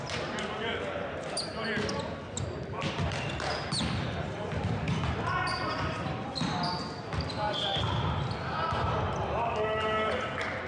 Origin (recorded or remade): recorded